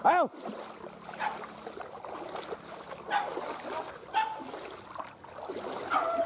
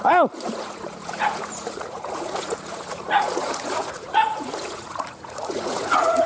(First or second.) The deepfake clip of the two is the second